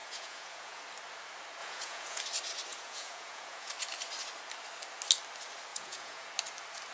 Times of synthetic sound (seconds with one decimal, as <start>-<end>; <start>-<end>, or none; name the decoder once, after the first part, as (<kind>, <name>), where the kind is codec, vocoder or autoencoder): 0.0-0.8 (vocoder, Vocos); 1.6-2.2; 2.7-3.7; 5.7-6.3